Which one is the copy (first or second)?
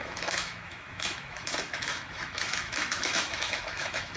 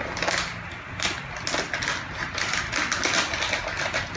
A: first